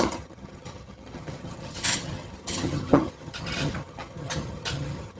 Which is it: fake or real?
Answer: fake